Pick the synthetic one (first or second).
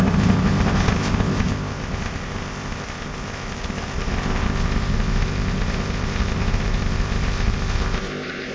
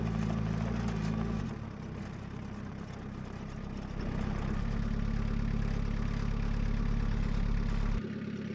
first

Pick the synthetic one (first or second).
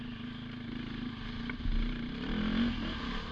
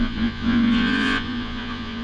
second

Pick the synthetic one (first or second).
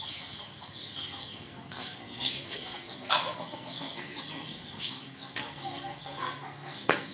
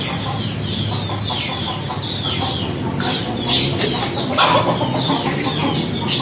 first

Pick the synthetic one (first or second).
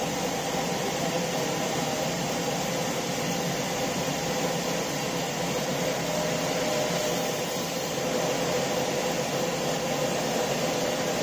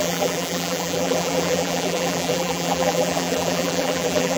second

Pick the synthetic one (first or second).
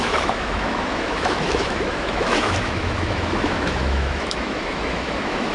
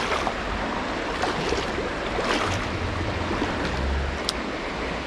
first